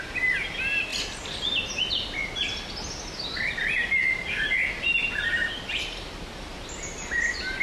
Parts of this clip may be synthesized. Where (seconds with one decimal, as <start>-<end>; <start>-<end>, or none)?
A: none